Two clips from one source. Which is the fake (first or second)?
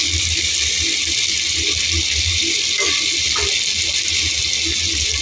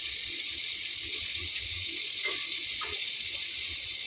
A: second